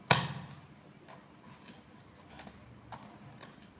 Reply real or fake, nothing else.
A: real